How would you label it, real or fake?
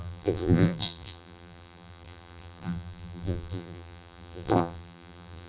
fake